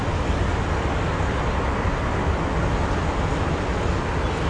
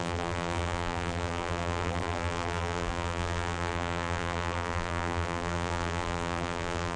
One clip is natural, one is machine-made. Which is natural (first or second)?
first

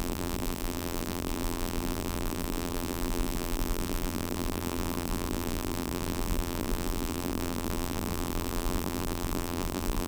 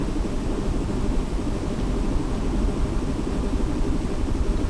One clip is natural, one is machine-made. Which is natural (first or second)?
second